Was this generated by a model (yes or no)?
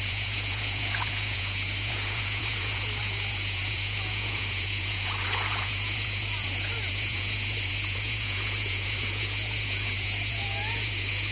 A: yes